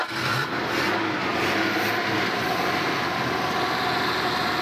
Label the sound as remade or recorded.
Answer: recorded